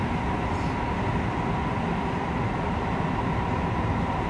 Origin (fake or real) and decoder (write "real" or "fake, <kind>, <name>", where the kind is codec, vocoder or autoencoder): real